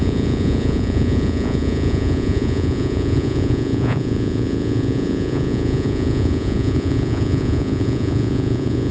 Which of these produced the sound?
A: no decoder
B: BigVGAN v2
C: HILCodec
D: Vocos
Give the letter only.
D